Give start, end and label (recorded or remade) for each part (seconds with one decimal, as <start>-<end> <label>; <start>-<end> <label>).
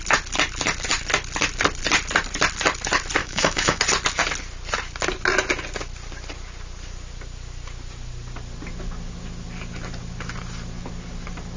0.0-3.2 recorded; 3.2-3.8 remade; 3.8-11.6 recorded